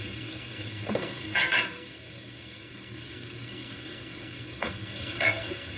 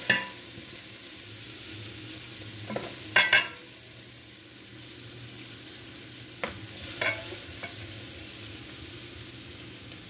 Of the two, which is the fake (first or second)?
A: first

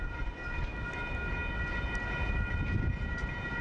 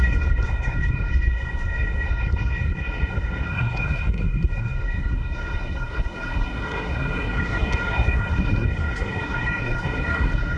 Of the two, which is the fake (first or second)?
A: second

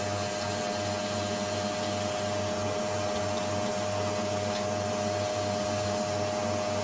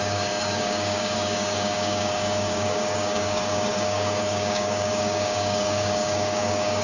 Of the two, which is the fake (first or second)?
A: second